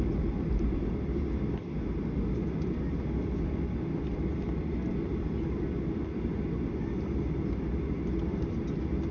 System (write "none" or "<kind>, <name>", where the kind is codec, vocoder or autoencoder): none